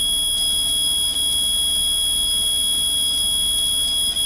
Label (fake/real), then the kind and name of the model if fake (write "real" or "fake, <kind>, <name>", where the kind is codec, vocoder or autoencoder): real